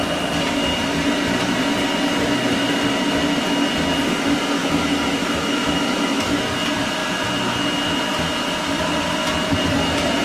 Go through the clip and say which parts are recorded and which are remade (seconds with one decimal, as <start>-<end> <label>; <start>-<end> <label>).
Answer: 0.0-4.6 recorded; 4.6-6.4 remade; 6.4-10.2 recorded